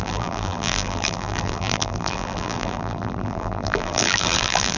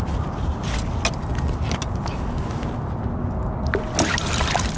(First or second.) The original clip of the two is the second